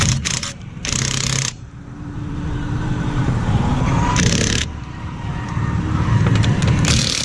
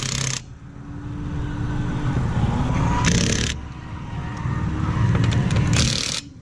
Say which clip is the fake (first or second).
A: first